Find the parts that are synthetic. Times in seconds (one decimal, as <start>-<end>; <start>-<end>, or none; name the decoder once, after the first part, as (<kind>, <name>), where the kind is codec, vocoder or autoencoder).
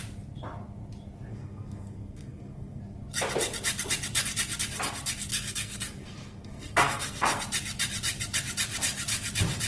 1.3-2.8 (codec, SNAC); 5.3-7.4